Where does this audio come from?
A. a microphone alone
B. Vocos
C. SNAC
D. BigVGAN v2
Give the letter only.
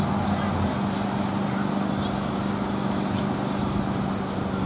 A